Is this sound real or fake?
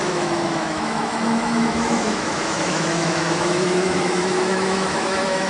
fake